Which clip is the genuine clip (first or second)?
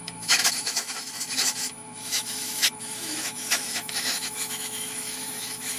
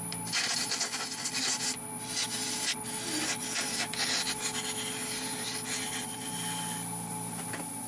second